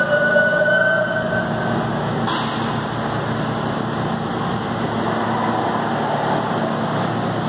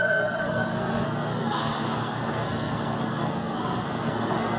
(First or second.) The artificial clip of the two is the second